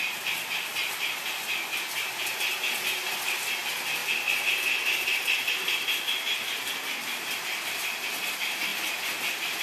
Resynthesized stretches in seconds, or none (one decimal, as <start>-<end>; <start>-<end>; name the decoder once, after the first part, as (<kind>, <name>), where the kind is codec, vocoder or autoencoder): 4.0-7.7 (vocoder, BigVGAN v2)